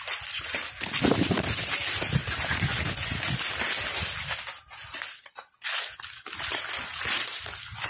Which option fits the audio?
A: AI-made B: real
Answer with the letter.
B